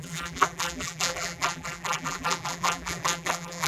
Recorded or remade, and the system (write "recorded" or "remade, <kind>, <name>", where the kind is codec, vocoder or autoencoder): remade, vocoder, BigVGAN v2